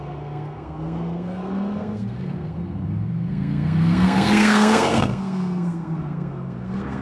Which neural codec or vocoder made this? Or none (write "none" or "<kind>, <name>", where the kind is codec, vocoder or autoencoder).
codec, SNAC